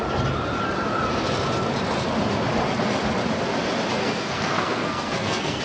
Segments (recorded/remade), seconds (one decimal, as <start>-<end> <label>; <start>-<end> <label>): 0.0-4.0 recorded; 4.0-5.6 remade